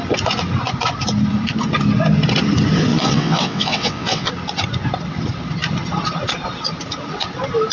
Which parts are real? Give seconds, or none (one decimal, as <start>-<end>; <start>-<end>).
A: 0.0-2.9; 4.3-7.7